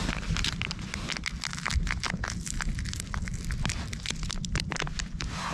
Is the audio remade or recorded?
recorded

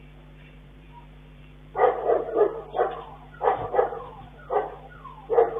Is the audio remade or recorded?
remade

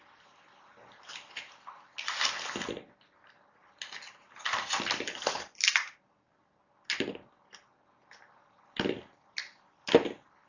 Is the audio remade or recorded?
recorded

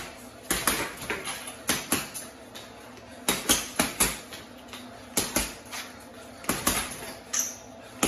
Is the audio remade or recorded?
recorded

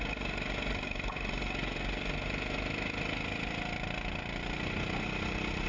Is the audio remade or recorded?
recorded